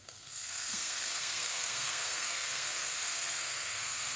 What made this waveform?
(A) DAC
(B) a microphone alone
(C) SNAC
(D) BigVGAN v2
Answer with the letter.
C